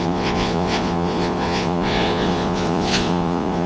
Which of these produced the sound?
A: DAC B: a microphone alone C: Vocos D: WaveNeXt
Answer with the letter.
C